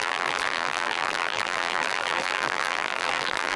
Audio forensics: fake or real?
fake